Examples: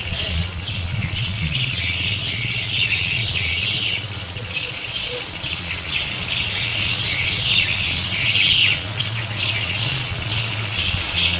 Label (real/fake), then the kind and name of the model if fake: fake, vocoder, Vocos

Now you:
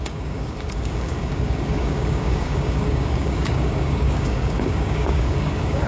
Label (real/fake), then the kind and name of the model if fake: fake, codec, DAC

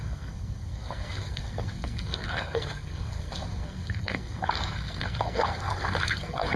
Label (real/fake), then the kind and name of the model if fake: fake, codec, SNAC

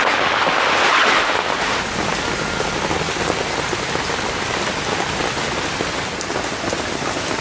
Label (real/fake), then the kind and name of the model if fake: real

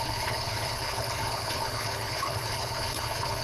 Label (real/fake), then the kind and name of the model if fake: fake, codec, HILCodec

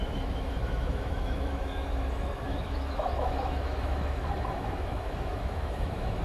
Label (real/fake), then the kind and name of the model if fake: fake, autoencoder, DAC-VAE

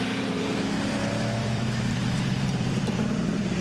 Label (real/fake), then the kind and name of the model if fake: fake, vocoder, BigVGAN v2